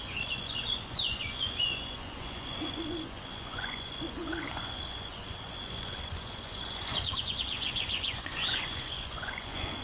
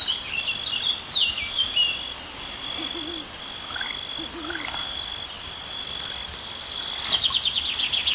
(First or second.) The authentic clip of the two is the second